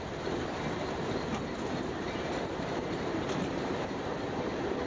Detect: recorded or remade remade